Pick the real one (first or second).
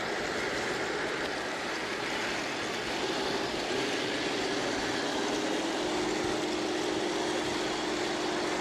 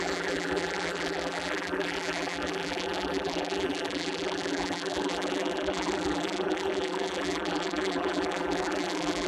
first